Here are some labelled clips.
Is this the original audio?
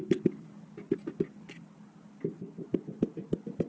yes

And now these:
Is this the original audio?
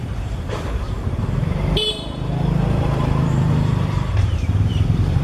no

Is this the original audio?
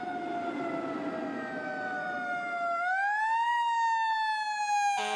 yes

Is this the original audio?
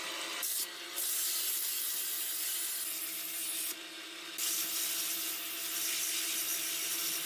yes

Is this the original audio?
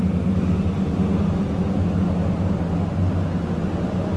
yes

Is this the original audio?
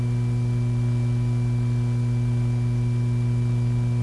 yes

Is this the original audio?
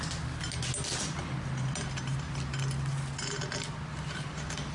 yes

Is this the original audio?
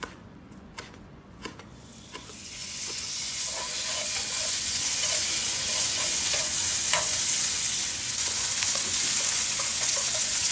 no